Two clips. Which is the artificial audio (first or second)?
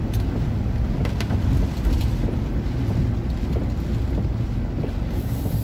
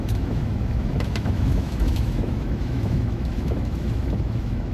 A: second